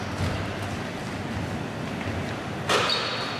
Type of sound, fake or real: real